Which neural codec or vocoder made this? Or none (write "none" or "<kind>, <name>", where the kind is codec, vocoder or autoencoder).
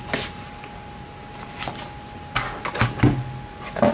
none